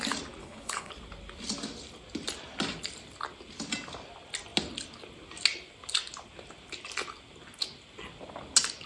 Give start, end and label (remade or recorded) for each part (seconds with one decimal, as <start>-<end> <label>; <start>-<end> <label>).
0.0-0.4 recorded; 0.4-0.9 remade; 0.9-8.9 recorded